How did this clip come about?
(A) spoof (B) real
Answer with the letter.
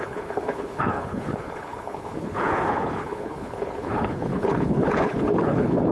A